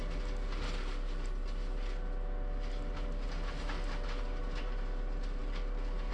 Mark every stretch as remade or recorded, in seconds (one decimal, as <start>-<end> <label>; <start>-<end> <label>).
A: 0.0-6.1 recorded